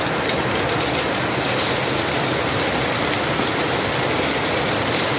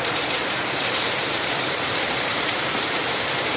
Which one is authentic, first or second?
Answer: first